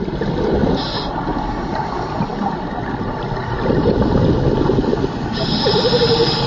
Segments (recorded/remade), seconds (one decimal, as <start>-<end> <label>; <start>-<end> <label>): 0.0-6.5 recorded